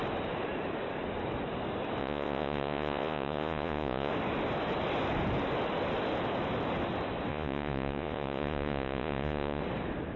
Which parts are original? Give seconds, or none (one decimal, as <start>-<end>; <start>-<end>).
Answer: 0.0-2.0; 4.1-7.3; 9.6-10.2